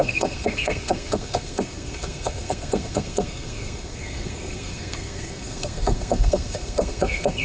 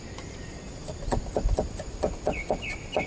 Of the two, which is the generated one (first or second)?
first